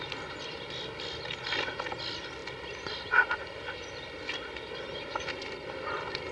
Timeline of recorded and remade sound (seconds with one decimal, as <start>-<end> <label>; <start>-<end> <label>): 0.0-6.3 remade